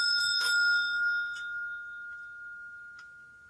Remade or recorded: recorded